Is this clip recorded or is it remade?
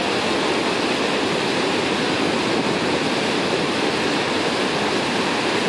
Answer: recorded